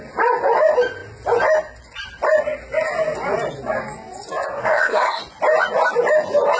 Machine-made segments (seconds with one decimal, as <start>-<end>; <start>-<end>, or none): 4.6-5.2